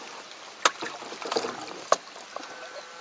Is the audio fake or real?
real